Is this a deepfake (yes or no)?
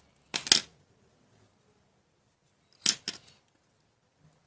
no